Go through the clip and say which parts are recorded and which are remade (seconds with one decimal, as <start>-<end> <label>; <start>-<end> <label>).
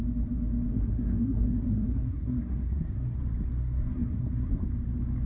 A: 0.0-0.7 recorded; 0.7-3.2 remade; 3.2-3.6 recorded; 3.6-4.6 remade; 4.6-5.3 recorded